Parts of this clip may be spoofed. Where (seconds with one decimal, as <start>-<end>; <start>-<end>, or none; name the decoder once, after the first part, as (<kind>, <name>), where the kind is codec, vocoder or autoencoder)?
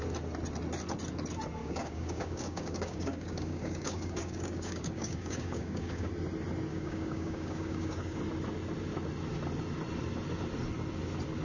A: 1.6-6.1 (codec, DAC); 6.7-8.2